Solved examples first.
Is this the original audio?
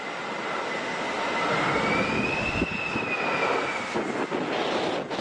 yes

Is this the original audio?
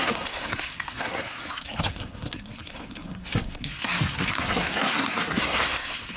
no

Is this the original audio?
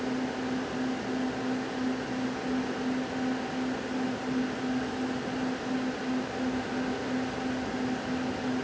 yes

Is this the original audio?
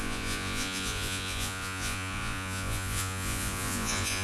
no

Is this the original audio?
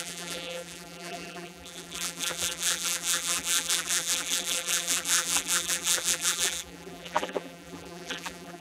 no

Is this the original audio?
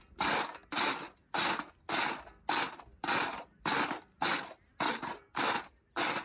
yes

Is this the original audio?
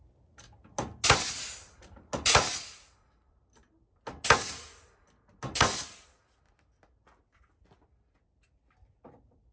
yes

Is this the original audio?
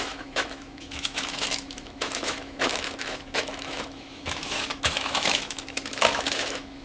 no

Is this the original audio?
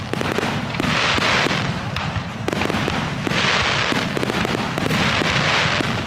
yes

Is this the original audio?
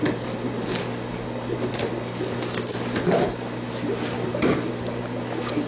yes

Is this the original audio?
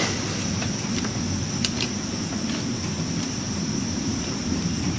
no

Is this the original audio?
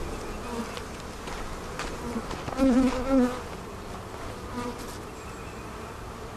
yes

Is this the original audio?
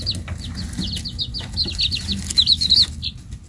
yes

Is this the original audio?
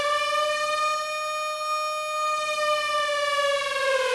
yes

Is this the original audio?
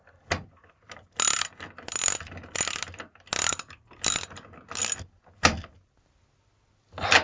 yes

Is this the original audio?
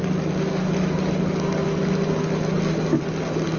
yes